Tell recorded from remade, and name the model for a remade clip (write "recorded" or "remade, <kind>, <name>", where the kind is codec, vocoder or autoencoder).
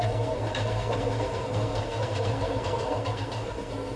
remade, codec, SNAC